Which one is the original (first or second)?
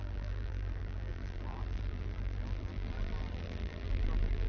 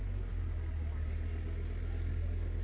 second